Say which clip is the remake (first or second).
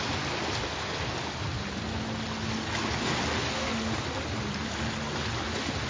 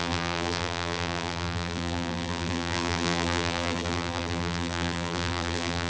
second